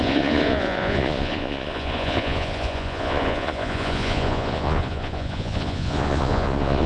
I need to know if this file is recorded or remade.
remade